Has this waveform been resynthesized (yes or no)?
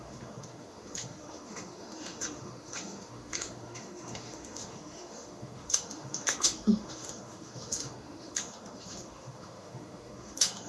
yes